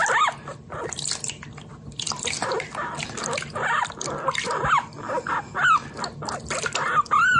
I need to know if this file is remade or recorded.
recorded